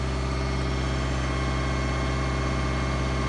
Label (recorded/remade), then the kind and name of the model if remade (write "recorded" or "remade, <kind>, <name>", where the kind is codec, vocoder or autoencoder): recorded